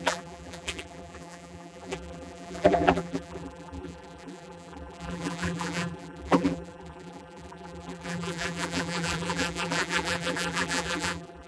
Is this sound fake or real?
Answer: fake